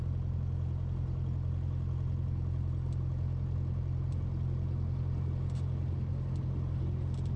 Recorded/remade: recorded